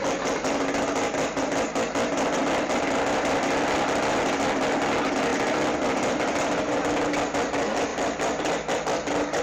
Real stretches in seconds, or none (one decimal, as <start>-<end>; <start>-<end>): 0.0-2.4; 4.6-7.9